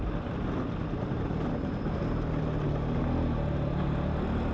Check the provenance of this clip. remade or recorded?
recorded